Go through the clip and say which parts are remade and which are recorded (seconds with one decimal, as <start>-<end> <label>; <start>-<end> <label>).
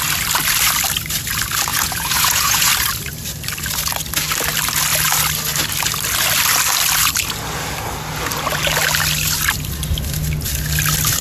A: 0.0-1.7 recorded; 1.7-2.7 remade; 2.7-11.2 recorded